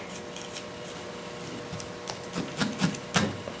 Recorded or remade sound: recorded